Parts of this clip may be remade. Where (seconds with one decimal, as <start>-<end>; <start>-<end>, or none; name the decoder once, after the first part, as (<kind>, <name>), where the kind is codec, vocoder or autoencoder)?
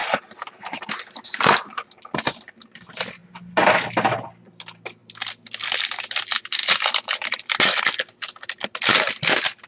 0.0-0.8 (vocoder, BigVGAN v2)